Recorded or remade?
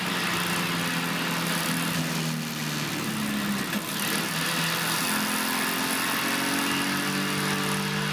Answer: recorded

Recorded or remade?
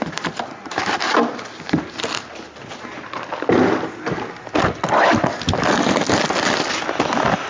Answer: recorded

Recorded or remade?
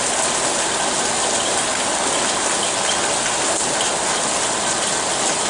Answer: recorded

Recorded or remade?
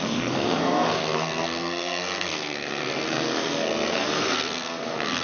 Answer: remade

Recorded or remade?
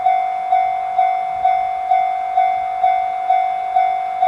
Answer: recorded